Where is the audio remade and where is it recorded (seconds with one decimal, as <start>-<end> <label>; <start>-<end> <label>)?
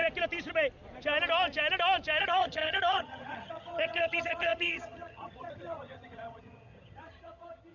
0.0-2.2 recorded; 2.2-7.7 remade